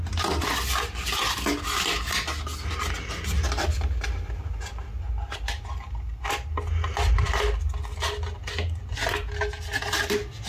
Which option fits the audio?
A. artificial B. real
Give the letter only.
B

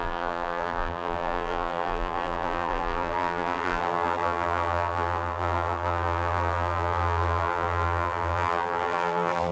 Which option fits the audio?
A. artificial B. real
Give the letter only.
A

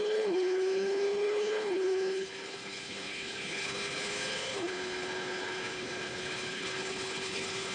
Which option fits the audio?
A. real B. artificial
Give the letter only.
B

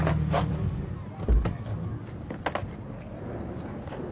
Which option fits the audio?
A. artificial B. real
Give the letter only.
B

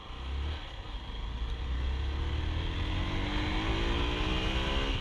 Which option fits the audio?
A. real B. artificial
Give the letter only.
A